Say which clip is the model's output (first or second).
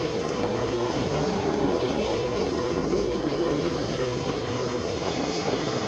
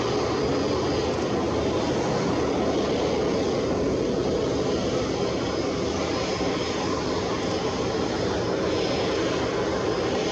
first